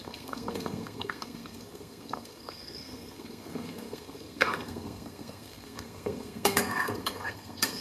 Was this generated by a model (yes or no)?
yes